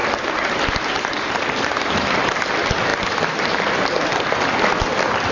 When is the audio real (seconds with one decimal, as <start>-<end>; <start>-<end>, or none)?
0.0-5.3